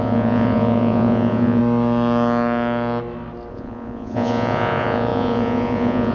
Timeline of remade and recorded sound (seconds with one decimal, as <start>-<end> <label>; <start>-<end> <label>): 0.0-1.6 remade; 1.6-3.5 recorded; 3.5-6.1 remade